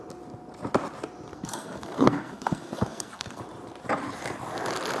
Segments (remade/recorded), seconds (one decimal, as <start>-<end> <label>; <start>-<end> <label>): 0.0-1.3 recorded; 1.3-3.4 remade; 3.4-5.0 recorded